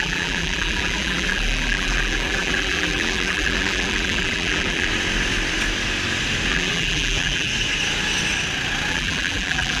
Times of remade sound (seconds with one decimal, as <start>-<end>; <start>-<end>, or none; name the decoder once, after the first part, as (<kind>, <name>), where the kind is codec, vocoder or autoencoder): 0.0-4.9 (vocoder, BigVGAN v2); 6.5-7.5; 8.9-9.8